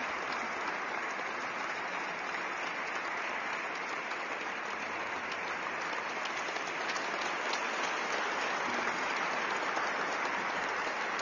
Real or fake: real